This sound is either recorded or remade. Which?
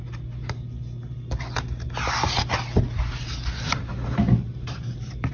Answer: recorded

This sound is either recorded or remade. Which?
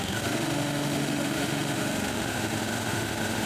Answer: remade